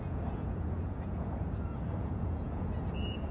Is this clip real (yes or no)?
no